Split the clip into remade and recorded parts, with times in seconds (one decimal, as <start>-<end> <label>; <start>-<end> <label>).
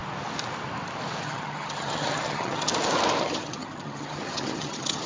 0.0-1.2 recorded; 1.2-2.7 remade; 2.7-3.2 recorded; 3.2-5.1 remade